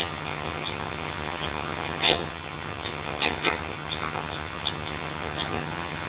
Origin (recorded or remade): remade